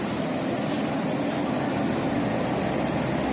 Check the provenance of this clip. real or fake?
real